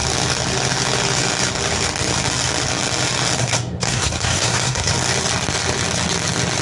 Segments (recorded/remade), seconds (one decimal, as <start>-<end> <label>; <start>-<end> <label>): 0.0-3.4 recorded; 3.4-4.9 remade; 4.9-6.6 recorded